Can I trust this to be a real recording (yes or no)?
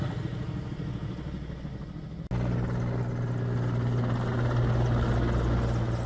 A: yes